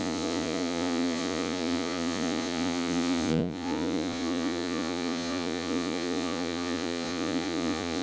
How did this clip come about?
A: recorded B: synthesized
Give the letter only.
B